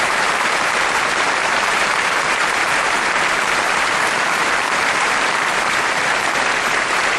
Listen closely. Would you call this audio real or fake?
fake